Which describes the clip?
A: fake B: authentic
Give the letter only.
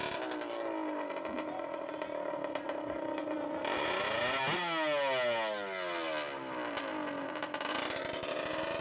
B